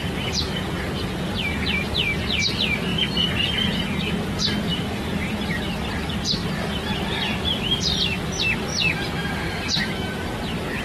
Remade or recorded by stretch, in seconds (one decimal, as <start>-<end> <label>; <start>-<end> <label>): 0.0-6.4 recorded; 6.4-7.6 remade; 7.6-10.8 recorded